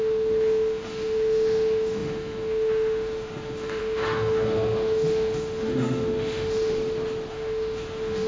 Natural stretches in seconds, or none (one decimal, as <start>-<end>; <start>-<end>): 6.7-7.3